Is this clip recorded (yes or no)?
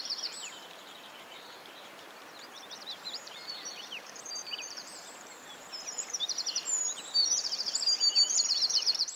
no